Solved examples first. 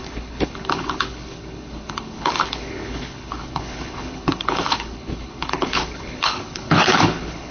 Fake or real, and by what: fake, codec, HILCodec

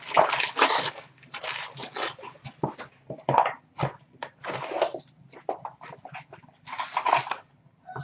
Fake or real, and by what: real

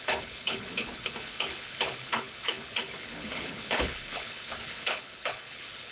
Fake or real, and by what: fake, codec, HILCodec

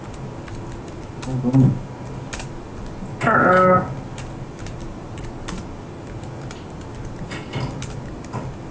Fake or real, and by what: real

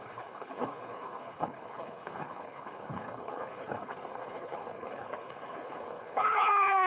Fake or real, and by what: fake, codec, HILCodec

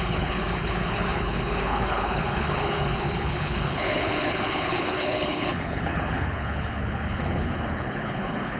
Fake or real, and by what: fake, codec, HILCodec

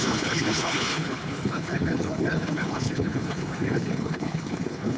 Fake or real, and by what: fake, codec, HILCodec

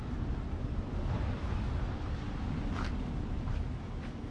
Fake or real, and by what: real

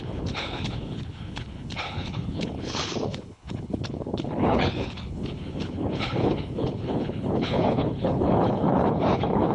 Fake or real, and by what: fake, codec, HILCodec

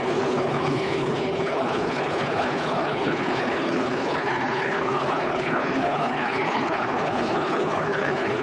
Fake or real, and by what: fake, codec, HILCodec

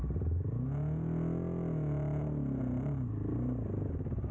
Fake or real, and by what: real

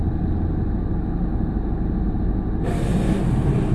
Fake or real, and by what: real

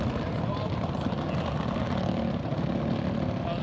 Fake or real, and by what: real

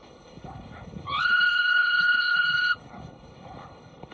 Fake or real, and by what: fake, codec, HILCodec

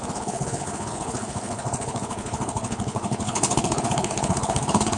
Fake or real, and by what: fake, codec, HILCodec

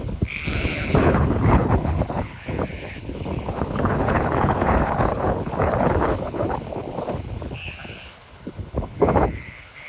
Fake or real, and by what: fake, codec, HILCodec